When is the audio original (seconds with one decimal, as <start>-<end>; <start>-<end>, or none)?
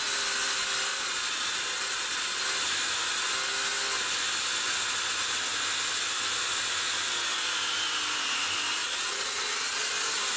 0.0-0.9; 2.4-8.8; 9.9-10.4